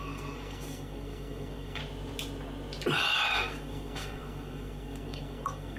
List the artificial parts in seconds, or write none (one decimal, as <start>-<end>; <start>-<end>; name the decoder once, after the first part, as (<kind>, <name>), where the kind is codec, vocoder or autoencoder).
0.0-1.8 (codec, SNAC); 3.3-5.8